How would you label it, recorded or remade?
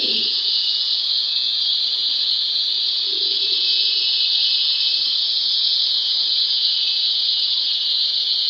remade